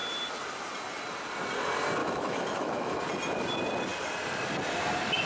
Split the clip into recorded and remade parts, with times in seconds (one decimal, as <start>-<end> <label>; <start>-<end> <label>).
0.0-2.0 recorded; 2.0-3.0 remade; 3.0-5.3 recorded